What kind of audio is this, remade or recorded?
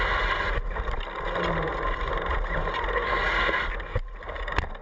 recorded